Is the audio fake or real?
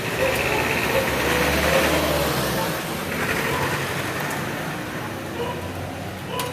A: real